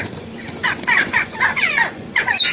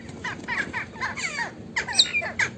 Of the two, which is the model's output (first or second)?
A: first